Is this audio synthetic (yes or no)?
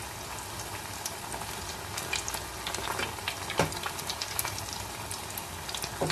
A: no